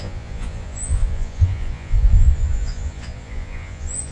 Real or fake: fake